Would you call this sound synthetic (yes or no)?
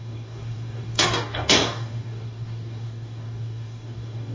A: yes